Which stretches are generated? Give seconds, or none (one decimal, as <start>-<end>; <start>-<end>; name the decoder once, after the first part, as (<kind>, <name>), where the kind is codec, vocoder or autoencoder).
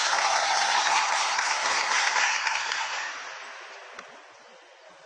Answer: 0.0-3.1 (codec, SNAC)